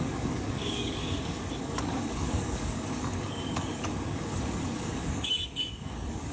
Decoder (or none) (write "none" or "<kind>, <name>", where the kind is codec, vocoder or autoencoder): codec, DAC